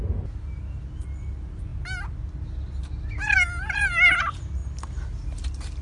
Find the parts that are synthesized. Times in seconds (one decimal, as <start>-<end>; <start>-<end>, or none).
none